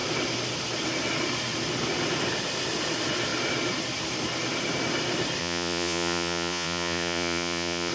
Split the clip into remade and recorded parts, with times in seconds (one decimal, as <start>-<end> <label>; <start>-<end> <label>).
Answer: 0.0-5.4 recorded; 5.4-7.9 remade